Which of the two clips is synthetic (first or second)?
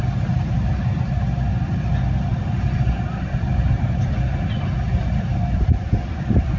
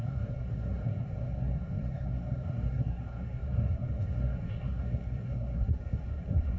second